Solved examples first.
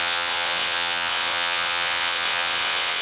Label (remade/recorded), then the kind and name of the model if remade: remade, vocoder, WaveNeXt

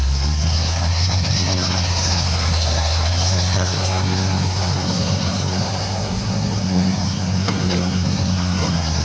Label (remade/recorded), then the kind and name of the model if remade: remade, codec, SNAC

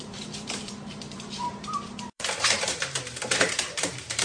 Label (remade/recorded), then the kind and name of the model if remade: remade, vocoder, BigVGAN v2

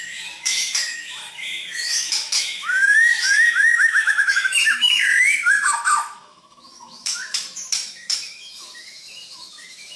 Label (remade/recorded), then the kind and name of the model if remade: remade, autoencoder, DAC-VAE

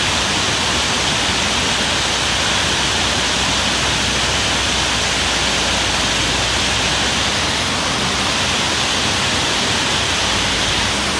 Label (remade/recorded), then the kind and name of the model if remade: recorded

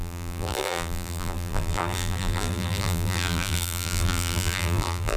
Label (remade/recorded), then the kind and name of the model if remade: remade, vocoder, BigVGAN v2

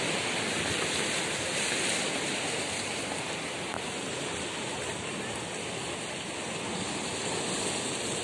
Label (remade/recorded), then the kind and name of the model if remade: recorded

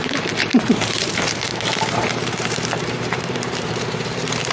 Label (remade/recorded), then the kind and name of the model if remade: remade, vocoder, BigVGAN v2